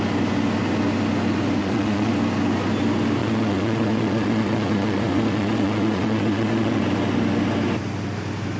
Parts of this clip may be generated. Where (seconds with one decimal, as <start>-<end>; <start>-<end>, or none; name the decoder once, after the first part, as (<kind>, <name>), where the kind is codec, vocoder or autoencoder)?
1.6-2.1 (vocoder, Vocos); 3.2-6.8